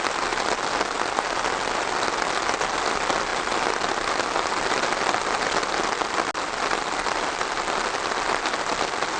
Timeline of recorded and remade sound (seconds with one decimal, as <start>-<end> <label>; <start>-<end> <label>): 0.0-9.2 recorded